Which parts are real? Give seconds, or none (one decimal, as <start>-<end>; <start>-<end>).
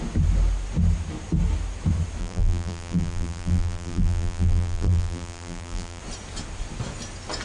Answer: 0.0-2.2; 6.0-7.4